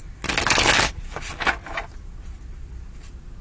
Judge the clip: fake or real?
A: real